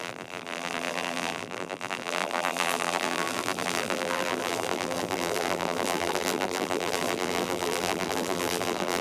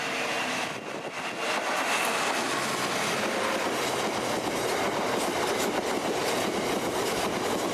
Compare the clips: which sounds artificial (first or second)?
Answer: first